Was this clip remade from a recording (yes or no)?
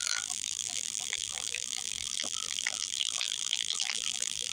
yes